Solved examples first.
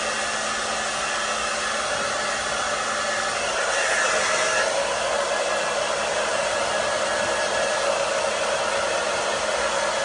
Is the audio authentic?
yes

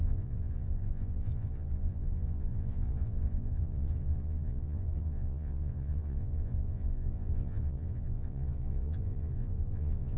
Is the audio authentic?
no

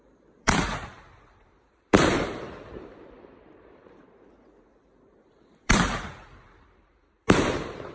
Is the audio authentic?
no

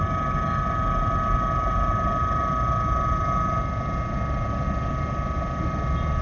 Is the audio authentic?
yes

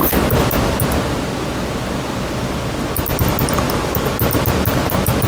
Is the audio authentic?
yes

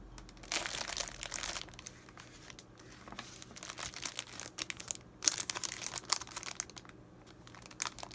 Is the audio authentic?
yes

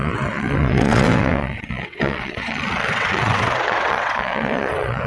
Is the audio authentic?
no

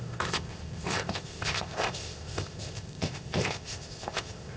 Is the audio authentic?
no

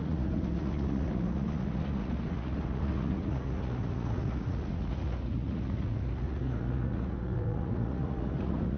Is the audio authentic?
no